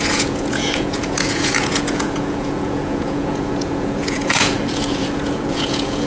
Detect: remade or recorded remade